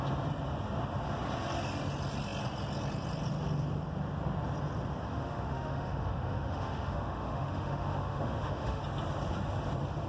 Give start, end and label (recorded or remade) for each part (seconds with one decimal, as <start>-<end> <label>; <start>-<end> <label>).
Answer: 0.0-5.1 recorded; 5.1-8.8 remade; 8.8-10.1 recorded